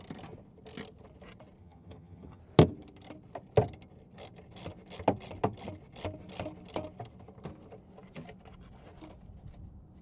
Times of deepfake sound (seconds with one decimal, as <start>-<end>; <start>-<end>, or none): 1.6-2.4